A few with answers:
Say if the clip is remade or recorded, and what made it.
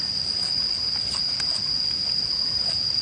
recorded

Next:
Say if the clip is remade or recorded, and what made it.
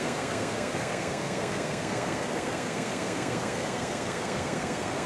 remade, codec, SNAC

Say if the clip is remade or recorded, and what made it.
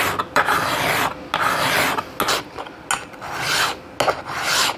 recorded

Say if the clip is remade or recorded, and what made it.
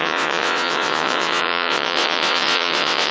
remade, vocoder, WaveNeXt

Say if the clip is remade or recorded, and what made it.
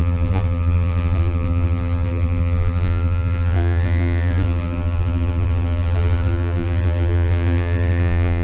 remade, vocoder, BigVGAN v2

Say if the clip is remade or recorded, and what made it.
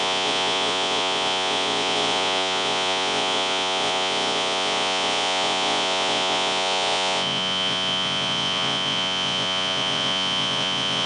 remade, vocoder, Vocos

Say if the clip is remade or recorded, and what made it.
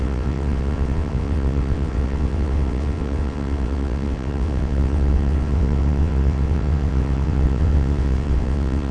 remade, vocoder, WaveNeXt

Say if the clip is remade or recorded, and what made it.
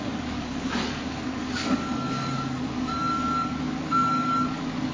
remade, codec, DAC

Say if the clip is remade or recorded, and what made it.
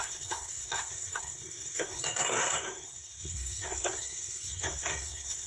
remade, codec, SNAC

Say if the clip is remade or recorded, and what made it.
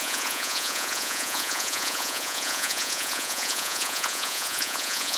remade, vocoder, Vocos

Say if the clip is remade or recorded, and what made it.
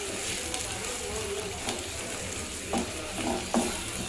recorded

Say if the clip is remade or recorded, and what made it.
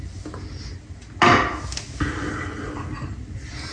recorded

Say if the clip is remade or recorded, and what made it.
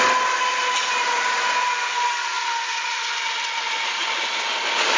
recorded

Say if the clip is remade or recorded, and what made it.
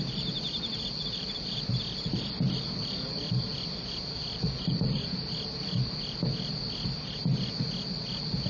recorded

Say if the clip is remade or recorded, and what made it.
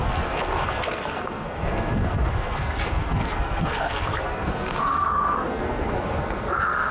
remade, codec, SNAC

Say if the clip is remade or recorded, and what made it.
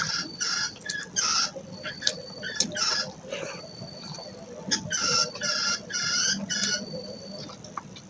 recorded